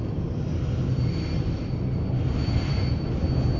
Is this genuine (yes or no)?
yes